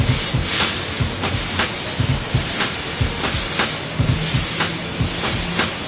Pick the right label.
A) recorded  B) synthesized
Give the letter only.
A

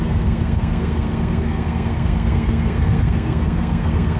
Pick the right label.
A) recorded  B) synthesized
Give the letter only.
B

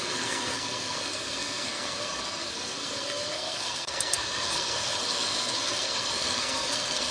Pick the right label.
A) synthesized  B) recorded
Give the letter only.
A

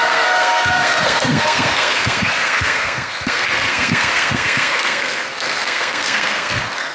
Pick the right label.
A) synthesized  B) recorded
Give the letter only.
A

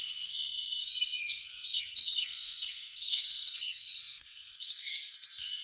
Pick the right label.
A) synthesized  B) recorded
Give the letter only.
A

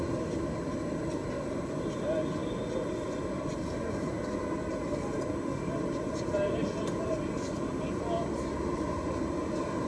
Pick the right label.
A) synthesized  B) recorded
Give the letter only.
B